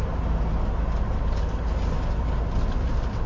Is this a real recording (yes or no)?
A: yes